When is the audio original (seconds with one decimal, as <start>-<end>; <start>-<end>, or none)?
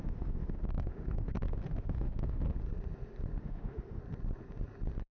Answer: 2.6-3.4; 4.0-5.1